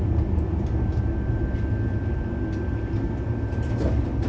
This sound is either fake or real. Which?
real